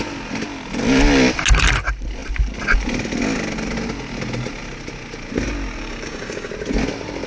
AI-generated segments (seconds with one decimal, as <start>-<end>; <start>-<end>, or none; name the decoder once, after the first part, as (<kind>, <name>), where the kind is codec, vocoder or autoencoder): 5.8-6.5 (codec, DAC)